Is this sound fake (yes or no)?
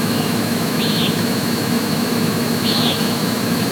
yes